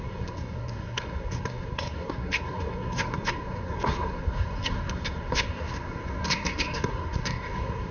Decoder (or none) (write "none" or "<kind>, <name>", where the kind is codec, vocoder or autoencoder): codec, SNAC